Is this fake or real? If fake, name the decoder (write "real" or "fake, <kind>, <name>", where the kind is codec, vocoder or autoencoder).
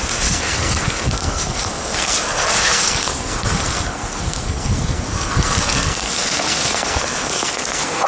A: fake, codec, SNAC